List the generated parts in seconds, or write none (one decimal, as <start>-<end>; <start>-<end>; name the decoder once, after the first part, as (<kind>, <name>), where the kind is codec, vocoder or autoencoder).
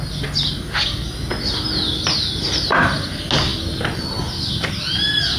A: none